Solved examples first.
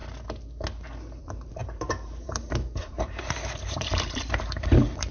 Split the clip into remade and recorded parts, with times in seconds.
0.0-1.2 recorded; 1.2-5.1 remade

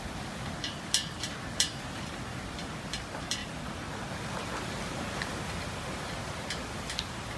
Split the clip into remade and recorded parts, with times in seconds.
0.0-7.4 recorded

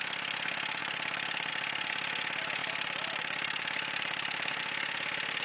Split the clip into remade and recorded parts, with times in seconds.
0.0-0.8 recorded; 0.8-1.5 remade; 1.5-2.6 recorded; 2.6-4.6 remade; 4.6-5.4 recorded

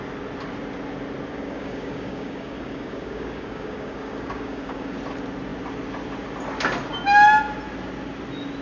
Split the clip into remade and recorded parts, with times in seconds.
0.0-1.3 recorded; 1.3-5.0 remade; 5.0-8.6 recorded

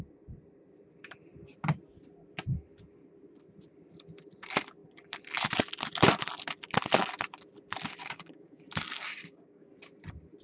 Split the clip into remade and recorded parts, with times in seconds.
0.0-8.0 recorded; 8.0-8.6 remade; 8.6-9.1 recorded; 9.1-9.7 remade; 9.7-10.4 recorded

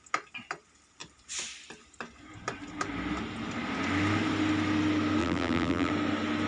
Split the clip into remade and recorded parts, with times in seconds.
0.0-5.2 recorded; 5.2-5.9 remade; 5.9-6.5 recorded